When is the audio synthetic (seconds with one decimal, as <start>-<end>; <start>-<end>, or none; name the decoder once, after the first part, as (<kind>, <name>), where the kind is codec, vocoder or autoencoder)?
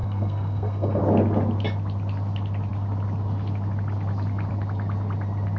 0.0-1.0 (codec, SNAC)